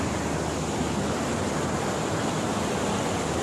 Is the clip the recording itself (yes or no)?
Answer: yes